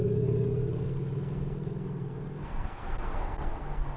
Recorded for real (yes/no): no